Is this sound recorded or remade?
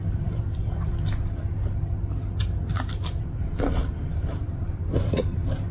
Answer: remade